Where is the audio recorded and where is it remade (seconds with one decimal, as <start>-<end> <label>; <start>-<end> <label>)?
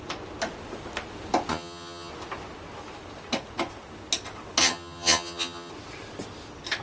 0.0-1.5 recorded; 1.5-2.1 remade; 2.1-4.6 recorded; 4.6-5.7 remade; 5.7-6.8 recorded